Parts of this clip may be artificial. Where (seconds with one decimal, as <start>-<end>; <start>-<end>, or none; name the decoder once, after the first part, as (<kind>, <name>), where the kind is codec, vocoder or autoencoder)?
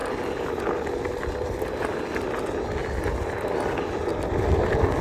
2.8-3.4 (vocoder, BigVGAN v2); 4.1-5.0